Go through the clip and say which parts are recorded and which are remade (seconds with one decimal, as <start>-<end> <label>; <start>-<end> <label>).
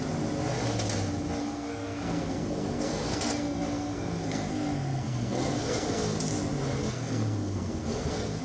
0.0-1.4 recorded; 1.4-6.2 remade; 6.2-6.8 recorded; 6.8-8.4 remade